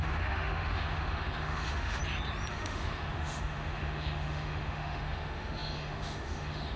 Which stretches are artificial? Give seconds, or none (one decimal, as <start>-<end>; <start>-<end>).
0.0-2.0; 2.5-6.8